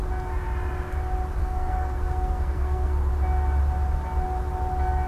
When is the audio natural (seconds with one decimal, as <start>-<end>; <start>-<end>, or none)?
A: 0.0-1.4; 3.1-5.1